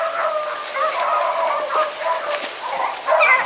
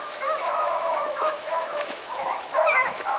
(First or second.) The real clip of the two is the first